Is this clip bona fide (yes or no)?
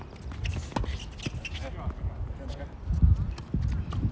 yes